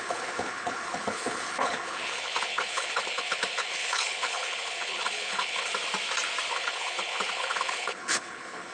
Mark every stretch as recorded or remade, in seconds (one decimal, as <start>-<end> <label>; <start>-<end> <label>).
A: 0.0-5.7 remade; 5.7-6.5 recorded; 6.5-8.7 remade